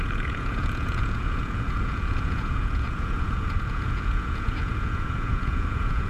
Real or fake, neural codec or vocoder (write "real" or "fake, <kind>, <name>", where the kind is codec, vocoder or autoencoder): fake, vocoder, Vocos